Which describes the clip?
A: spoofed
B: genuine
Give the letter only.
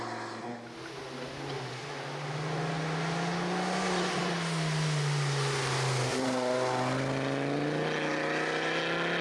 B